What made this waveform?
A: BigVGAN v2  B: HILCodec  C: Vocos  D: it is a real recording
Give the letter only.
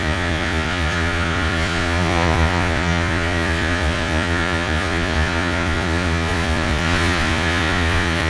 C